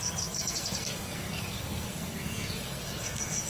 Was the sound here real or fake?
fake